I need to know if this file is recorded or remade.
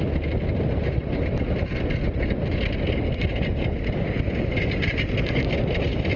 recorded